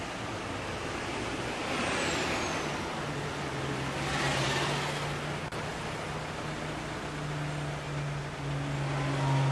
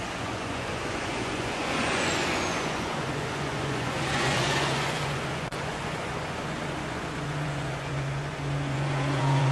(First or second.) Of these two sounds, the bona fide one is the first